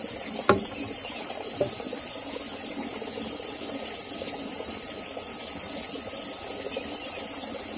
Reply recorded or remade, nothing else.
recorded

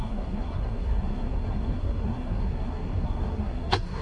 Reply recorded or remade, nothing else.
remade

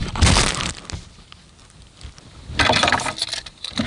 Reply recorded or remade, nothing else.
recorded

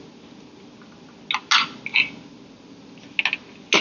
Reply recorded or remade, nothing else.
recorded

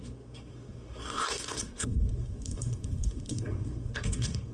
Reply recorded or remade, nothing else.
remade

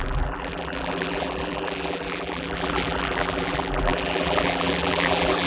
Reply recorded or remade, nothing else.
remade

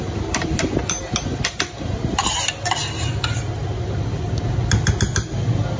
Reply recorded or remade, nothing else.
recorded